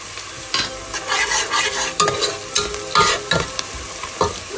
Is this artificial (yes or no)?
no